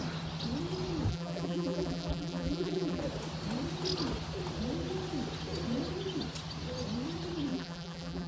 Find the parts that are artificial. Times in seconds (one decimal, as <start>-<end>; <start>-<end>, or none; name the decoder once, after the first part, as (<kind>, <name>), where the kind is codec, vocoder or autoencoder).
1.1-3.0 (vocoder, BigVGAN v2); 7.5-8.3